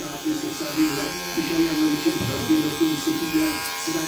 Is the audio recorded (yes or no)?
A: no